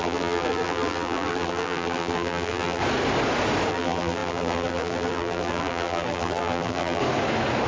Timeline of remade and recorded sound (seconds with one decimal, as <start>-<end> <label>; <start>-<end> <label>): 0.0-2.8 remade; 2.8-3.7 recorded; 3.7-7.0 remade; 7.0-7.7 recorded